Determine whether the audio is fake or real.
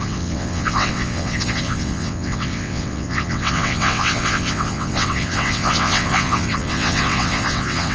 fake